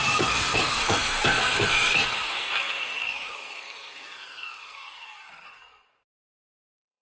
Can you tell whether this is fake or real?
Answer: fake